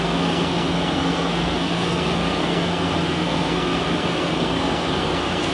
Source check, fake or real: fake